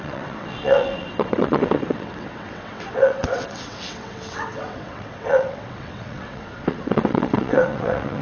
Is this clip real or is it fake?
fake